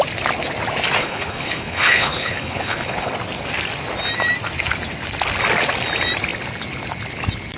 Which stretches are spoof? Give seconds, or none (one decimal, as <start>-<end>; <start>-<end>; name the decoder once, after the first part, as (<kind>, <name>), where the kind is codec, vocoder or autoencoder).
1.0-3.1 (codec, HILCodec)